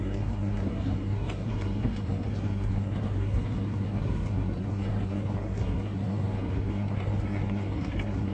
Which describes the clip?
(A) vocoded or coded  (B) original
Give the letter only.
A